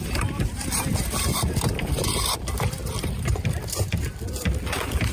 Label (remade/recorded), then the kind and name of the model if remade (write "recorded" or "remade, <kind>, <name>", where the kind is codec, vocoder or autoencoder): remade, vocoder, BigVGAN v2